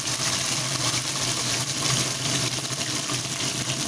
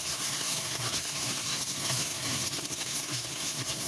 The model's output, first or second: second